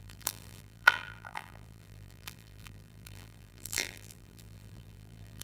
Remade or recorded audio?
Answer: remade